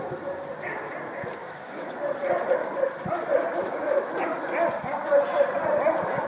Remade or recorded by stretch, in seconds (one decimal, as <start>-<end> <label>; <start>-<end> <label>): 0.0-1.4 recorded; 1.4-2.1 remade; 2.1-3.6 recorded; 3.6-4.1 remade; 4.1-6.3 recorded